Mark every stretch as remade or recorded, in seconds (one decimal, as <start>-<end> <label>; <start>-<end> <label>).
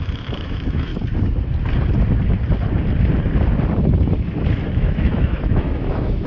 0.0-0.9 remade; 0.9-4.7 recorded; 4.7-6.3 remade